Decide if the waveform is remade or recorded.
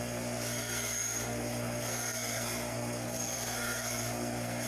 remade